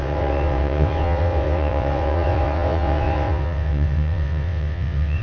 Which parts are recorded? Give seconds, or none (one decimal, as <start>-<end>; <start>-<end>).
none